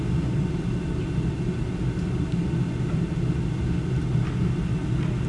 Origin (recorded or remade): recorded